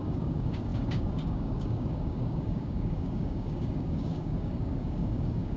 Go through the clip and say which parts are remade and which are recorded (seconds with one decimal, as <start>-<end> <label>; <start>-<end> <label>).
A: 0.0-5.6 remade